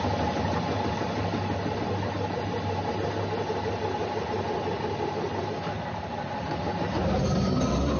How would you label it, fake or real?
real